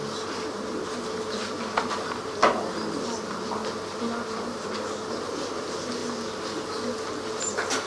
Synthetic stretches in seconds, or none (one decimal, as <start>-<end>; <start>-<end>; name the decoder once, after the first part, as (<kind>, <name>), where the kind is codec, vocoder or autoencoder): none

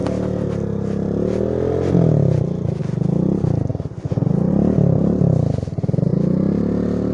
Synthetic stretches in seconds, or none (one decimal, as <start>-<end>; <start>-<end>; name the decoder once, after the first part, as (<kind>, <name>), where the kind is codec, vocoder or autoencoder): none

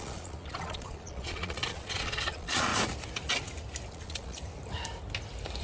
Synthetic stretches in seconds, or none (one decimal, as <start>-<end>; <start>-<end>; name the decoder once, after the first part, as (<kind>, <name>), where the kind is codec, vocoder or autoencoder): 0.0-2.7 (vocoder, Vocos); 3.9-4.4

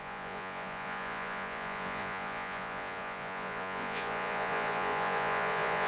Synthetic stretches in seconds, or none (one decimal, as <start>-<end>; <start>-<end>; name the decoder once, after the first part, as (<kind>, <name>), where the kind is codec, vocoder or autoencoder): 0.0-5.9 (vocoder, Vocos)

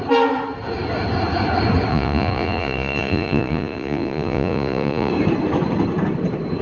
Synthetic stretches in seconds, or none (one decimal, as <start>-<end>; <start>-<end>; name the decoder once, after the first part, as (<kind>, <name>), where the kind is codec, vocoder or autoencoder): 1.9-5.1 (vocoder, Vocos)

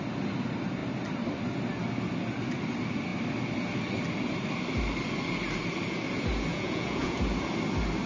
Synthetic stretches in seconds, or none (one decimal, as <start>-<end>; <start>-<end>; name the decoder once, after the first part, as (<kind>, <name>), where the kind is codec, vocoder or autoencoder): 6.5-7.2 (vocoder, Vocos)